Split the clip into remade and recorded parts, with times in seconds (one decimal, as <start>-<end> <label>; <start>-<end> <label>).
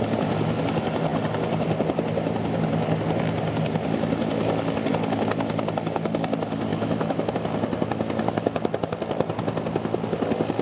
0.0-6.7 recorded; 6.7-7.3 remade; 7.3-10.6 recorded